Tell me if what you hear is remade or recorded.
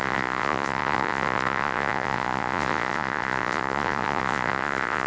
remade